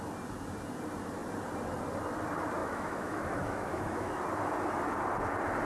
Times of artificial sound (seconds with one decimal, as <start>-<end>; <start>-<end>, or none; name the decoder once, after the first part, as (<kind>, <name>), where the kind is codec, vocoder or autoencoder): 2.6-4.2 (autoencoder, DAC-VAE)